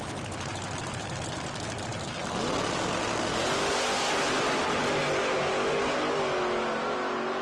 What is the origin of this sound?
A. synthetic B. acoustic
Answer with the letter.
B